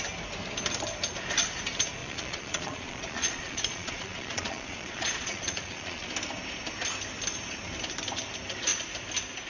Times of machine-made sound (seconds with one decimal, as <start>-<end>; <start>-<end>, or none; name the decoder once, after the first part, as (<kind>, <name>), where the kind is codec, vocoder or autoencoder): 2.0-6.1 (vocoder, Vocos)